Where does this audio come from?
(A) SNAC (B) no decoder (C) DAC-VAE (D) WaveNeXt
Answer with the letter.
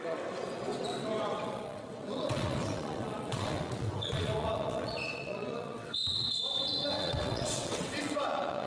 D